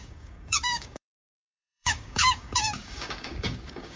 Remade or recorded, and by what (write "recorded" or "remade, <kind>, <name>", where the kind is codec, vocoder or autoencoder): remade, codec, DAC